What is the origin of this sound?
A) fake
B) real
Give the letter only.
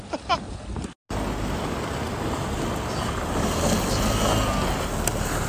B